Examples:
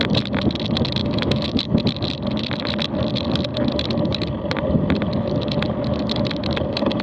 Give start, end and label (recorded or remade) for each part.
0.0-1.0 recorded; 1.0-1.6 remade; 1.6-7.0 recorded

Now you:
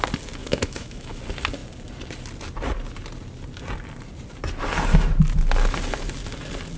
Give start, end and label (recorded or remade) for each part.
0.0-0.4 recorded; 0.4-1.2 remade; 1.2-6.8 recorded

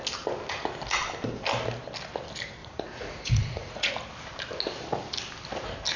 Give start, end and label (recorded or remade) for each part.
0.0-2.6 recorded; 2.6-3.9 remade; 3.9-6.0 recorded

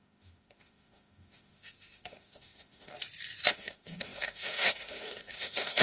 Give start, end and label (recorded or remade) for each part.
0.0-2.9 remade; 2.9-3.5 recorded; 3.5-5.8 remade

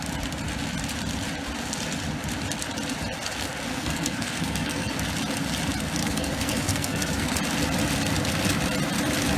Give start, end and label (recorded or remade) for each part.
0.0-3.7 recorded; 3.7-4.9 remade; 4.9-6.0 recorded; 6.0-7.4 remade; 7.4-9.4 recorded

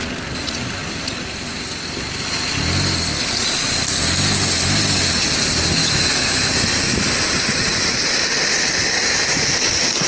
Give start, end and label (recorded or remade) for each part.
0.0-5.8 recorded; 5.8-6.5 remade; 6.5-10.1 recorded